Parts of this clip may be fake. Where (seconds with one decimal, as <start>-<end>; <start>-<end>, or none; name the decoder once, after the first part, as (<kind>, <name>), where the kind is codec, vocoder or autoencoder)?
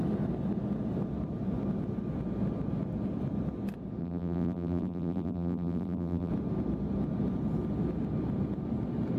4.0-6.3 (vocoder, BigVGAN v2)